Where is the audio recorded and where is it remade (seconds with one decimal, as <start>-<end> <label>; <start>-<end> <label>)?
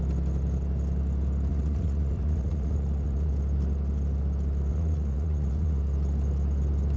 0.0-1.5 recorded; 1.5-3.3 remade; 3.3-4.7 recorded; 4.7-5.8 remade; 5.8-7.0 recorded